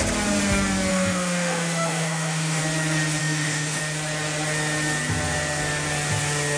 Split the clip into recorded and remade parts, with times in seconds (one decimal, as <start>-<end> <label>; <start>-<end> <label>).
0.0-0.9 recorded; 0.9-2.6 remade; 2.6-3.2 recorded; 3.2-3.8 remade; 3.8-6.6 recorded